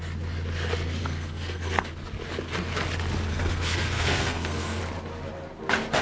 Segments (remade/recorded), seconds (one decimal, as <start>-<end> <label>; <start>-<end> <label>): 0.0-1.0 recorded; 1.0-1.9 remade; 1.9-3.3 recorded; 3.3-4.8 remade; 4.8-6.0 recorded